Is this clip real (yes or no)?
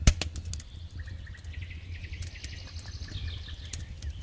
yes